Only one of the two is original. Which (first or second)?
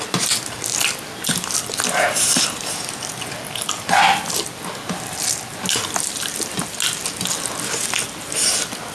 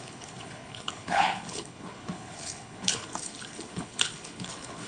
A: first